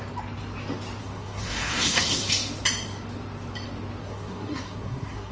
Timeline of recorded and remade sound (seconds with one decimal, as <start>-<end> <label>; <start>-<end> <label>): 0.0-1.0 recorded; 1.0-2.3 remade; 2.3-4.0 recorded; 4.0-5.3 remade